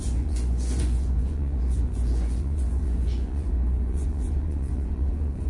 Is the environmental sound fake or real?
fake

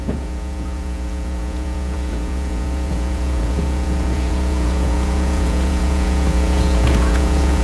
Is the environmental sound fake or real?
fake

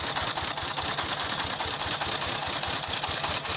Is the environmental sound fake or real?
real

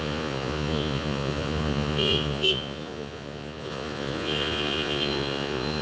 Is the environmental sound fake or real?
fake